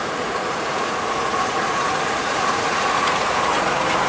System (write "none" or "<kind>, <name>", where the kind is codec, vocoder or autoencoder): vocoder, Vocos